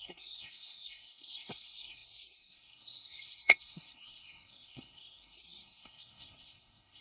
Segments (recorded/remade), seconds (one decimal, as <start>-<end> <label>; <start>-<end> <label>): 0.0-7.0 remade